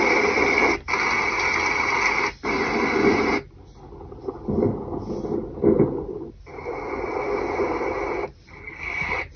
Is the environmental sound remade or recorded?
recorded